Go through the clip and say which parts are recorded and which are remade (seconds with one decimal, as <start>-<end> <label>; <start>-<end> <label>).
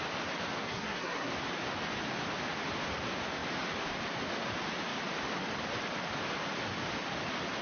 0.0-0.6 recorded; 0.6-1.3 remade; 1.3-7.6 recorded